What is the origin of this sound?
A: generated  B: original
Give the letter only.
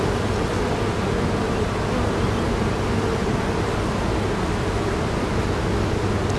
B